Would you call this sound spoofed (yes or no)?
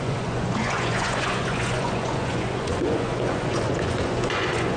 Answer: yes